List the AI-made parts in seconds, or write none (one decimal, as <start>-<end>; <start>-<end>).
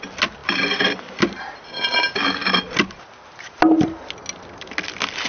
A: none